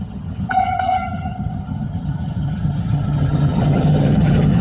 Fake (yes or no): yes